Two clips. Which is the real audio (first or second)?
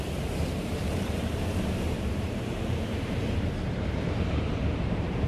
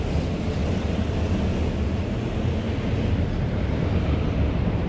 second